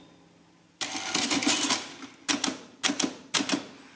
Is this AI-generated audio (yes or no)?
no